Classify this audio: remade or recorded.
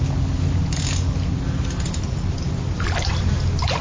recorded